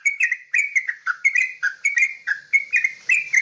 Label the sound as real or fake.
fake